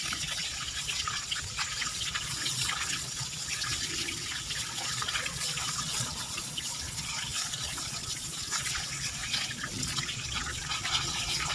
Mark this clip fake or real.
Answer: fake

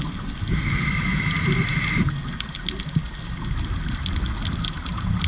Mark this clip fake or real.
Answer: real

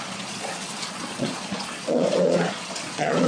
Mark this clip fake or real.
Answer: fake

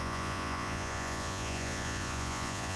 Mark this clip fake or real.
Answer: fake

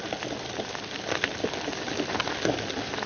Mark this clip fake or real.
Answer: real